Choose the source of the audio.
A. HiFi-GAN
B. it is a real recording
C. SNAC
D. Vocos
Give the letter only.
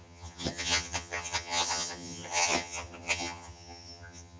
A